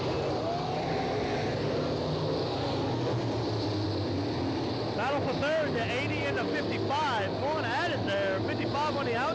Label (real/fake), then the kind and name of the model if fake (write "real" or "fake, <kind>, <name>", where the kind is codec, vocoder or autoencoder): real